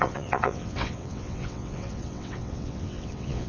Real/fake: fake